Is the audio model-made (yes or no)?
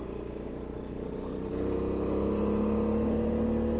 no